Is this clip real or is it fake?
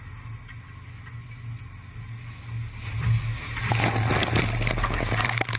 real